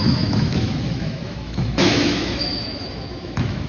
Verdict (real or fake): fake